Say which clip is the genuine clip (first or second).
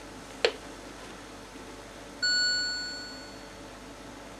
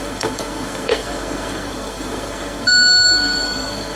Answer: first